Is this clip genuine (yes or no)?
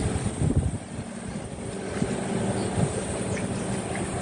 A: yes